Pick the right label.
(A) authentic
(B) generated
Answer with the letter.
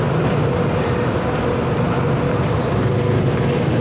A